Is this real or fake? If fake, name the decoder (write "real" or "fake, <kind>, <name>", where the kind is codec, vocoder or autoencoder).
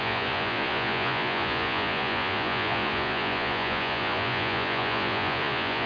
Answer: fake, vocoder, Vocos